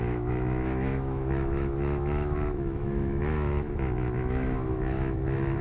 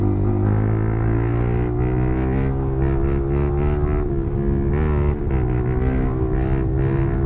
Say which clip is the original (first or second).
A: second